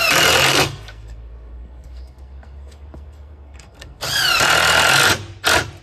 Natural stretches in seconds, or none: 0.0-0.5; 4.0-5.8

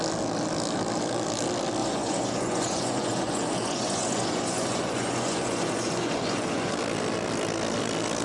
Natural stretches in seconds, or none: 0.0-1.8; 6.7-8.2